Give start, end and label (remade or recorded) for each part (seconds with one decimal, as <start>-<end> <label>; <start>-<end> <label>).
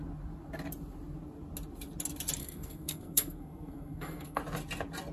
0.0-2.4 recorded; 2.4-4.4 remade; 4.4-5.1 recorded